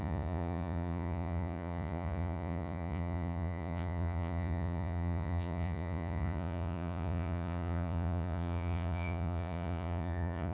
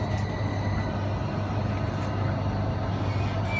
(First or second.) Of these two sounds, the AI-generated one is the first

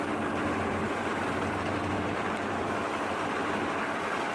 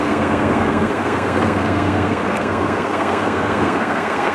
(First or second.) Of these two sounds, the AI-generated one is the second